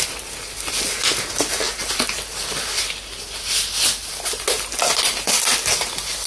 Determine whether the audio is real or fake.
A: real